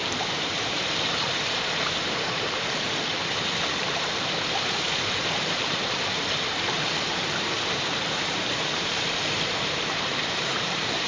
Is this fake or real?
fake